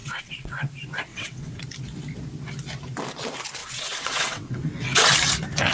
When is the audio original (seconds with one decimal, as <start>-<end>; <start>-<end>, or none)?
0.7-1.1; 1.6-3.6; 5.1-5.7